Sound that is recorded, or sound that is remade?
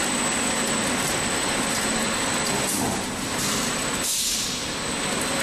recorded